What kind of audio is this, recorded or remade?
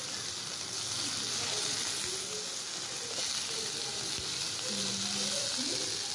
recorded